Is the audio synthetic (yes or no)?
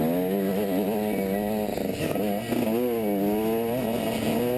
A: no